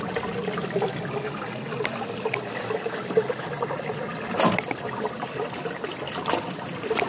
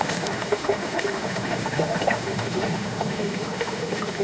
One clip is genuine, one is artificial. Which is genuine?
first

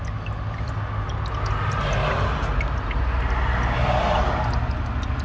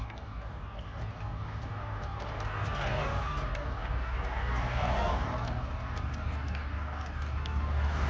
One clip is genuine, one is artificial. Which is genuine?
first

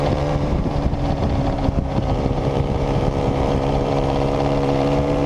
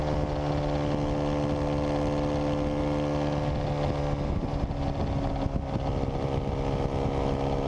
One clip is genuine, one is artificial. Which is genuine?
second